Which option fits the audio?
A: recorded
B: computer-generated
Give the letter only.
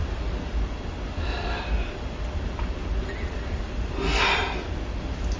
A